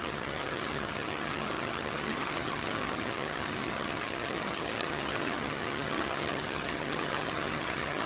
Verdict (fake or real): fake